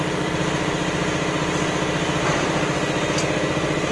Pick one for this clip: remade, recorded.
remade